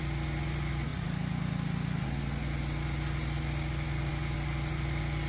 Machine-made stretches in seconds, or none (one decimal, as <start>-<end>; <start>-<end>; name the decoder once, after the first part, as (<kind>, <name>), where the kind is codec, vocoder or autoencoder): none